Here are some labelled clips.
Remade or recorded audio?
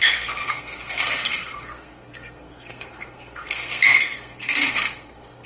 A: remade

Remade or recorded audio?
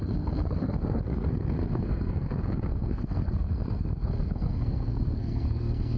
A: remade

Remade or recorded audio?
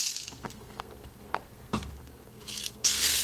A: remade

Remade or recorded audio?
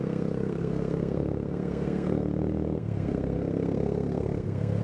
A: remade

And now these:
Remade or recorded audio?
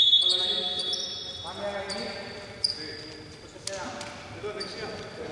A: recorded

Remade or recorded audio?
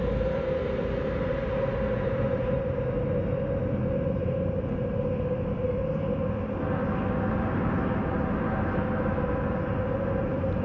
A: recorded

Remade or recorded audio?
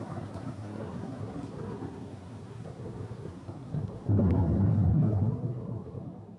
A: remade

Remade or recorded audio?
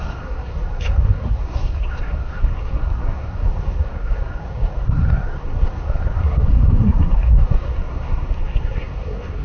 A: remade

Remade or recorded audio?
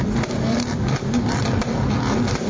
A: recorded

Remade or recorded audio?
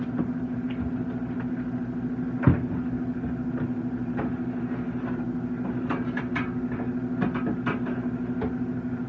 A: recorded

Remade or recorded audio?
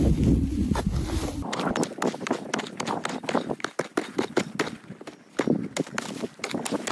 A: recorded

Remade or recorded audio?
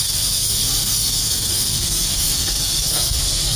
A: remade